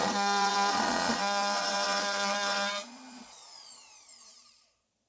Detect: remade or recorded remade